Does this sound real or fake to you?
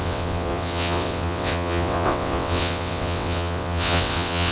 fake